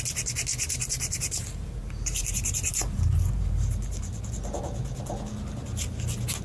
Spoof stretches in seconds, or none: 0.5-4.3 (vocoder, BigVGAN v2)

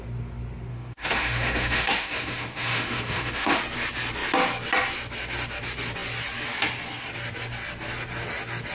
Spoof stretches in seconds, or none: 0.7-3.6 (autoencoder, DAC-VAE)

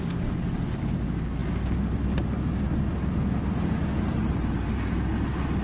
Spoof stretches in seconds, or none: none